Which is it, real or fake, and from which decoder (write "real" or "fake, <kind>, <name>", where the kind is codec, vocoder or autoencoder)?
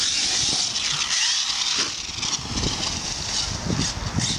real